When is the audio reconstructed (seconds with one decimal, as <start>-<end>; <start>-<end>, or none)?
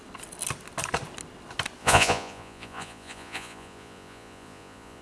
1.8-5.0